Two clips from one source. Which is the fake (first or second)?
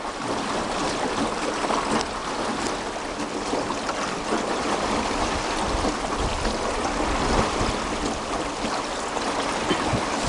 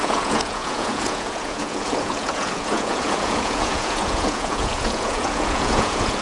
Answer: second